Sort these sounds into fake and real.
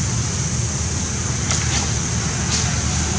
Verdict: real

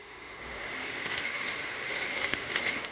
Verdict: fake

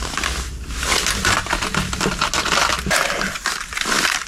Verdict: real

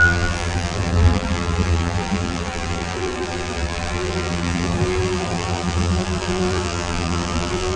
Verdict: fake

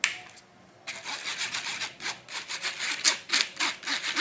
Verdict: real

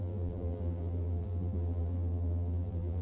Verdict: fake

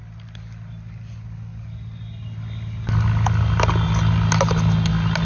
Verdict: real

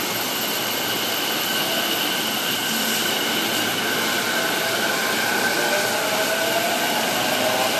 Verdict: real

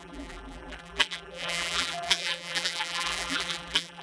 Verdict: fake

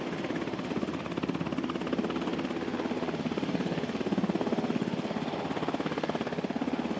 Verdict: real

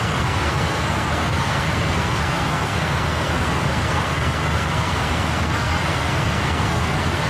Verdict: fake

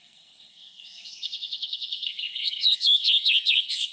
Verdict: fake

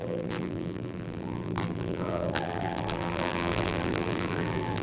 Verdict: fake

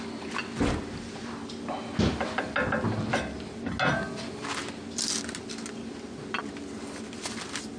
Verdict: real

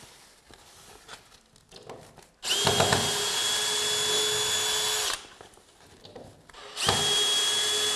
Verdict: real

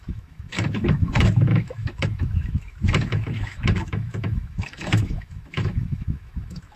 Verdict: fake